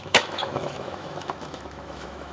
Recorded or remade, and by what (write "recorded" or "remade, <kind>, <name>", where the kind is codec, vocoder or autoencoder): remade, autoencoder, DAC-VAE